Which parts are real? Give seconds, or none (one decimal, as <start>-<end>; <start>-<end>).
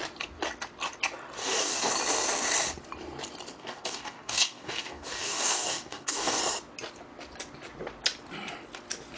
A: 0.0-1.4; 1.9-3.6; 6.4-9.2